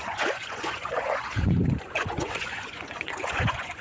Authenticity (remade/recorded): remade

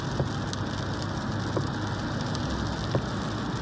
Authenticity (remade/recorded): recorded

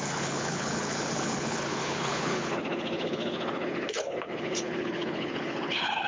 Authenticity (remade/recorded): remade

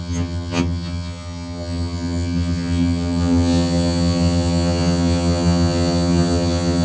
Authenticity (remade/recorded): remade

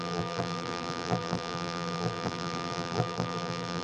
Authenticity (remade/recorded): remade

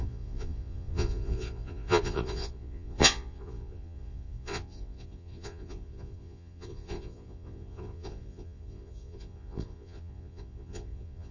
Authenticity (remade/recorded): remade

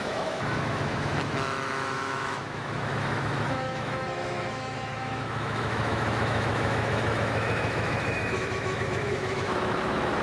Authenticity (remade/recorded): remade